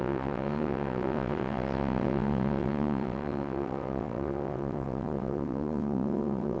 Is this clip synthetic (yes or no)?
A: yes